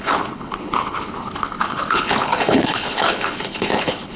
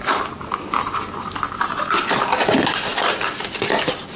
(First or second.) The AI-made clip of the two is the first